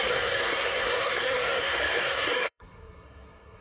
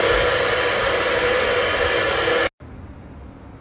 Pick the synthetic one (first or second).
first